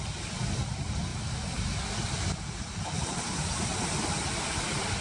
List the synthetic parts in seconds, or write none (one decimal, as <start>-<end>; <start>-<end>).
none